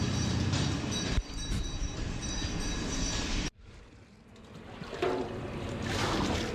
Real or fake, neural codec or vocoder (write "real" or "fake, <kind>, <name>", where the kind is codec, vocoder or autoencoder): real